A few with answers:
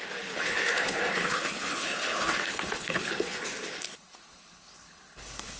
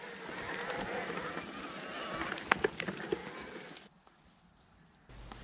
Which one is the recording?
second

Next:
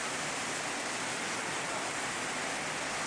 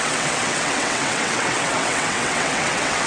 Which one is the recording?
first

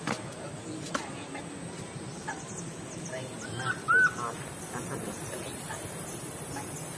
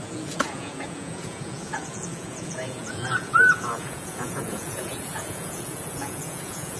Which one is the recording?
first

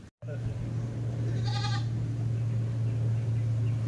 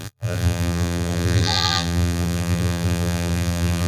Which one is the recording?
first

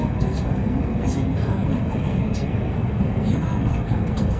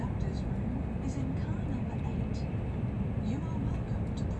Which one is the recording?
second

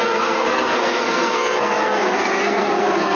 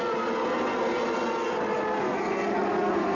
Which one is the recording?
second